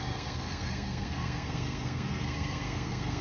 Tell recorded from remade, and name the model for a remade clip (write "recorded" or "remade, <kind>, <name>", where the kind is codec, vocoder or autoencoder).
remade, codec, SNAC